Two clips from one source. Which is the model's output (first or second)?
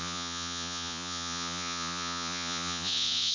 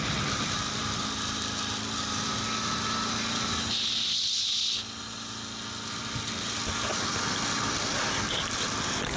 first